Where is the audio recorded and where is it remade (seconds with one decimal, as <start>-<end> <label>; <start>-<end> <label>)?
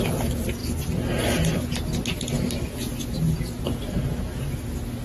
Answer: 0.0-5.0 recorded